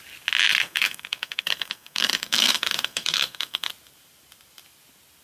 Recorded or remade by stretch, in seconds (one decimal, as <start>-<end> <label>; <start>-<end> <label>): 0.0-0.6 recorded; 0.6-3.7 remade; 3.7-5.2 recorded